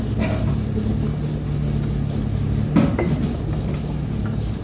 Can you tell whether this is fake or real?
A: real